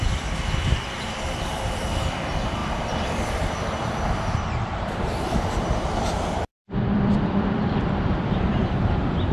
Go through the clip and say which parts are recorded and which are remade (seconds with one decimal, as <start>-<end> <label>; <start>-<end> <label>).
0.0-9.3 remade